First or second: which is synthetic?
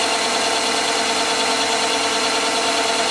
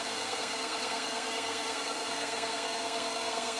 second